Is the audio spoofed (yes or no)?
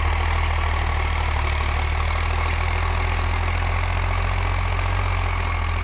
no